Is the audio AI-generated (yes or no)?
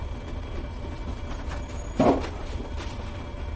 no